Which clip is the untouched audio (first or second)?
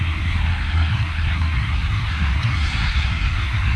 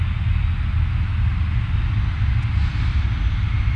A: second